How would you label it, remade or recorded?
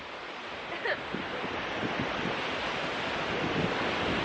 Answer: recorded